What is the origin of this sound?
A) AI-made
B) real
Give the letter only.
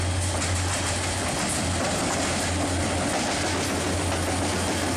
B